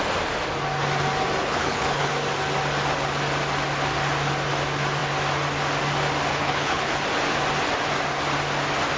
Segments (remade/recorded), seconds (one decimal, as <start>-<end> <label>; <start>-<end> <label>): 0.0-1.4 recorded; 1.4-2.1 remade; 2.1-6.3 recorded; 6.3-6.9 remade; 6.9-9.0 recorded